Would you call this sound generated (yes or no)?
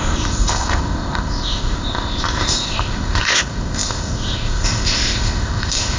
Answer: yes